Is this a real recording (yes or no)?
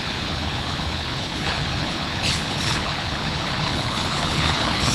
no